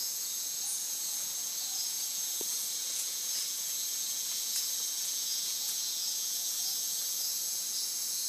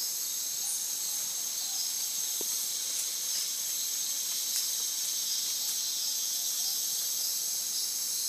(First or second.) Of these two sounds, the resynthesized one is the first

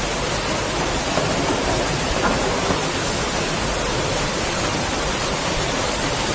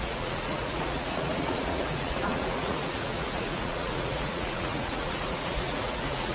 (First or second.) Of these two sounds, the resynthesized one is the second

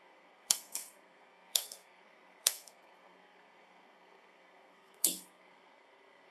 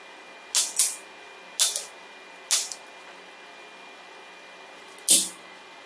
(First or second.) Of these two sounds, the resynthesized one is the first